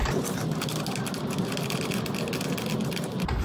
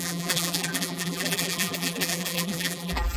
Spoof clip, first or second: second